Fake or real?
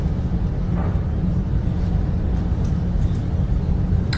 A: real